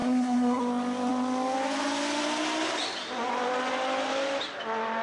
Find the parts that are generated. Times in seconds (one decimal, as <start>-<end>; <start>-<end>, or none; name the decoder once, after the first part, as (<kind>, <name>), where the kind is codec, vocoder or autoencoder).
0.0-0.6 (codec, SNAC)